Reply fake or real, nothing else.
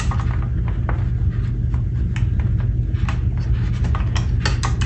real